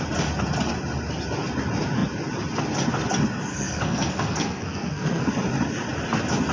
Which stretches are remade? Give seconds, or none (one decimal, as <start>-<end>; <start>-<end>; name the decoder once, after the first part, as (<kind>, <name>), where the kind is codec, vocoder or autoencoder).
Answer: 3.5-5.3 (codec, SNAC)